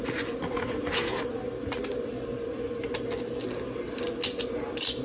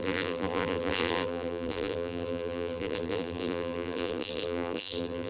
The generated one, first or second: second